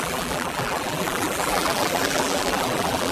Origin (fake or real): fake